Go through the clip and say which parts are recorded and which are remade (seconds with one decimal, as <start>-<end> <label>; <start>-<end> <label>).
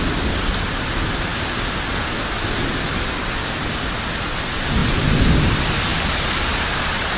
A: 0.0-4.8 recorded; 4.8-5.5 remade; 5.5-5.9 recorded; 5.9-7.2 remade